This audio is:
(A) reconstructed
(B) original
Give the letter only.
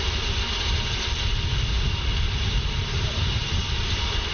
B